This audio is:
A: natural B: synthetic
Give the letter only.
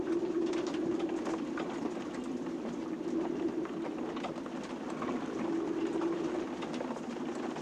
A